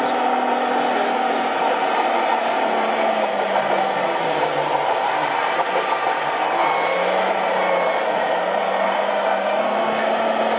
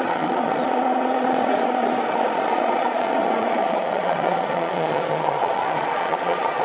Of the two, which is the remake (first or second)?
second